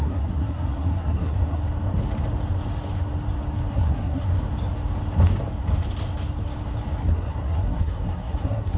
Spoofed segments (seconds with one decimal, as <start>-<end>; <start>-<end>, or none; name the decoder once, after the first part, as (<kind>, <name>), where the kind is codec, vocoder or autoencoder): 0.0-1.6 (codec, SNAC); 3.7-4.3; 7.0-8.8